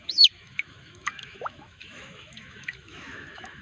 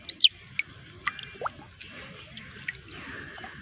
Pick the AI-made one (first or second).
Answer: first